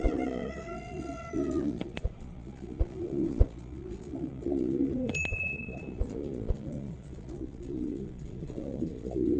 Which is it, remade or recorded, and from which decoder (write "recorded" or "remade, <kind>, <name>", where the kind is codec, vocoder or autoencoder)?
remade, vocoder, Vocos